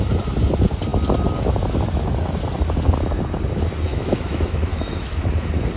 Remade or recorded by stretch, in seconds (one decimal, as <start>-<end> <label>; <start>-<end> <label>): 0.0-3.9 recorded; 3.9-5.3 remade; 5.3-5.8 recorded